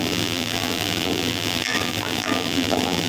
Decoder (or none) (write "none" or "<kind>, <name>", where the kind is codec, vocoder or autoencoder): vocoder, BigVGAN v2